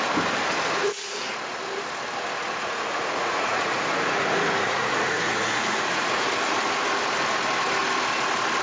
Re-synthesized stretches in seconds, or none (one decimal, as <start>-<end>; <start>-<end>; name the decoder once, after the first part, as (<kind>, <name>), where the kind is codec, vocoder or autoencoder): 0.8-1.3 (vocoder, Vocos); 2.5-6.3